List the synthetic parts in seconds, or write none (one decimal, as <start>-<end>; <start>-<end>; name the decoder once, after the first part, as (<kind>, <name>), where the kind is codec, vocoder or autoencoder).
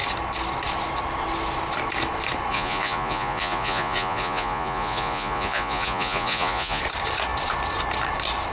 2.5-6.8 (vocoder, Vocos)